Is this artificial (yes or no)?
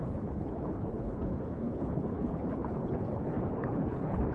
yes